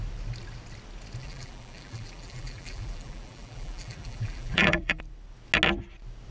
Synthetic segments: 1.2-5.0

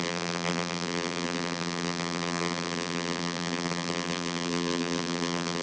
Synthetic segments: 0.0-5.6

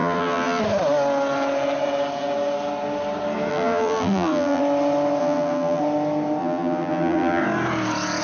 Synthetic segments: 0.0-0.6; 3.5-4.6; 5.2-5.8; 6.4-7.4

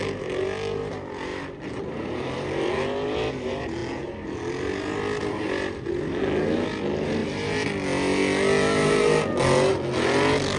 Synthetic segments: 1.3-2.7

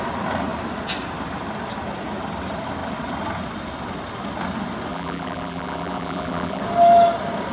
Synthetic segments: 4.9-6.6

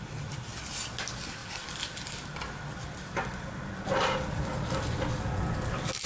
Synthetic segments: none

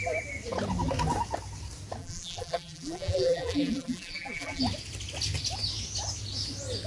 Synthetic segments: 2.0-4.6